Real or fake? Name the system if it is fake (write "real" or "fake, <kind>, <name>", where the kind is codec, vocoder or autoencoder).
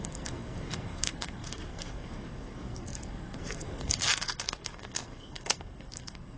fake, codec, SNAC